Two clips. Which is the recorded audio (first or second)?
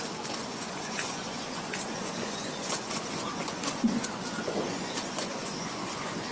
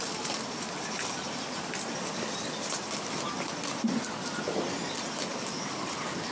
second